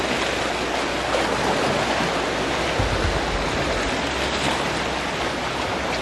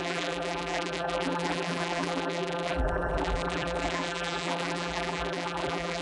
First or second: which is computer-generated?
second